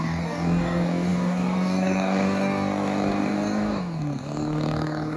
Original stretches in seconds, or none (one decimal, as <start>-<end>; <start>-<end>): none